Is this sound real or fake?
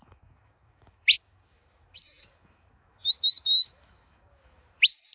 fake